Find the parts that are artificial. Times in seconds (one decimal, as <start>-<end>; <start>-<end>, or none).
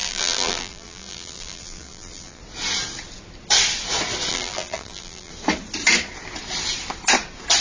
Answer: 0.0-2.4; 4.3-5.3